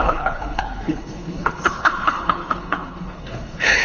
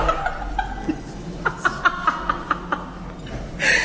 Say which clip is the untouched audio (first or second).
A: second